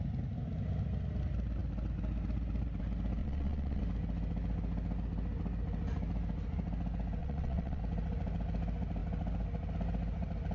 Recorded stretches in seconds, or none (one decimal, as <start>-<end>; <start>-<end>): 0.0-3.2; 3.8-7.2; 7.8-10.5